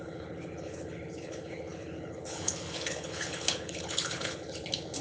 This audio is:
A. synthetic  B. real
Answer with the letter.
A